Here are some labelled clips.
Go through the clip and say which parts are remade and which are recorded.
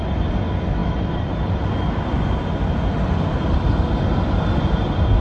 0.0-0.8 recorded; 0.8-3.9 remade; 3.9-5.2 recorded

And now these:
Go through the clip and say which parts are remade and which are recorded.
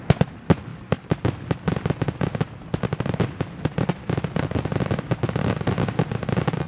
0.0-6.7 recorded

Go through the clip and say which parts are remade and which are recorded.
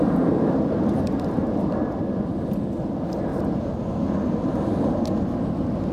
0.0-3.3 recorded; 3.3-3.8 remade; 3.8-5.9 recorded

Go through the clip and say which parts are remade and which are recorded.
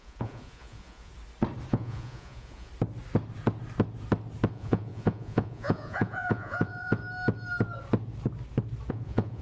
0.0-1.1 remade; 1.1-1.7 recorded; 1.7-2.7 remade; 2.7-4.5 recorded; 4.5-7.0 remade; 7.0-8.9 recorded; 8.9-9.4 remade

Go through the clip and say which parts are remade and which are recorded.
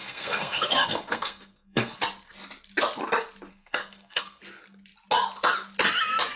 0.0-2.0 remade; 2.0-3.5 recorded; 3.5-4.4 remade; 4.4-6.4 recorded